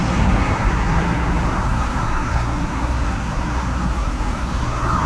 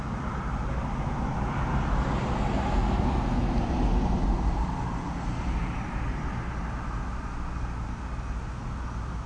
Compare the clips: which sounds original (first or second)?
second